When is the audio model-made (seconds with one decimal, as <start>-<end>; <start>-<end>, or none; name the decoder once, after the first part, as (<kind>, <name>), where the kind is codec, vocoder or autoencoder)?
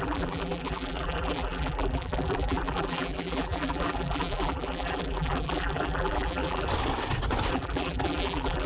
0.0-6.7 (vocoder, BigVGAN v2); 7.5-8.7